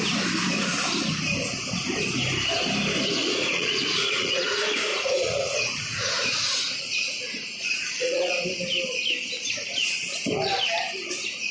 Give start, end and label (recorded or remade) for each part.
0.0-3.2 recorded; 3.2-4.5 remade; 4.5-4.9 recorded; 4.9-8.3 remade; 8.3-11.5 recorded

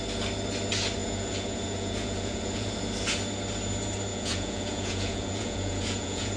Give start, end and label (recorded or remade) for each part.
0.0-1.0 recorded; 1.0-2.8 remade; 2.8-4.1 recorded; 4.1-6.4 remade

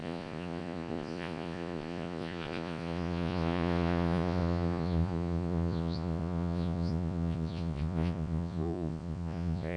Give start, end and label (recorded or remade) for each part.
0.0-9.8 remade

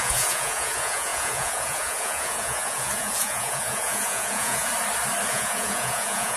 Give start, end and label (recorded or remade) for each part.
0.0-4.7 remade; 4.7-5.3 recorded; 5.3-6.4 remade

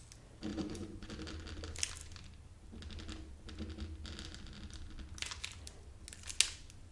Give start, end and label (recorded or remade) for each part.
0.0-0.5 recorded; 0.5-1.1 remade; 1.1-6.9 recorded